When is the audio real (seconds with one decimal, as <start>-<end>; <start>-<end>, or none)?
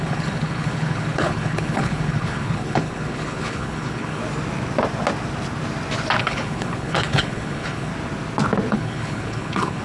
4.2-6.2; 7.9-8.7